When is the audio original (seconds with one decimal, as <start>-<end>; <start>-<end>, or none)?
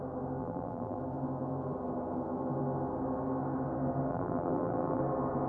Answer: 0.0-0.4; 1.0-4.1; 5.0-5.5